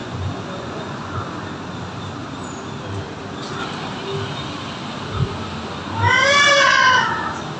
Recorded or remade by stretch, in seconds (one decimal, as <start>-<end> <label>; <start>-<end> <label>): 0.0-1.2 remade; 1.2-7.6 recorded